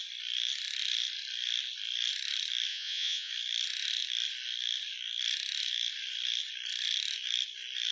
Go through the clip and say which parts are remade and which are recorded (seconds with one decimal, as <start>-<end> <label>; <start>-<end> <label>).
0.0-2.7 recorded; 2.7-3.3 remade; 3.3-7.9 recorded